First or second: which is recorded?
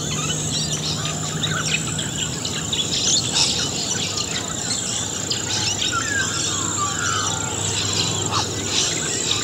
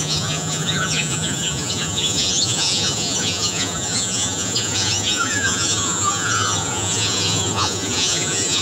first